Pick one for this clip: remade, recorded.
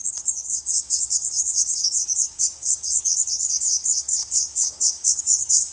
remade